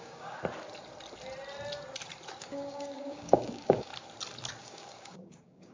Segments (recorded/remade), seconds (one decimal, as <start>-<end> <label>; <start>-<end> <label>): 0.0-0.4 remade; 0.4-2.4 recorded; 2.4-3.9 remade; 3.9-4.6 recorded; 4.6-5.7 remade